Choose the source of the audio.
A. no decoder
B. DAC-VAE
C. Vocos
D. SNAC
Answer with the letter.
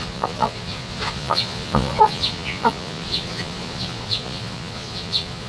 C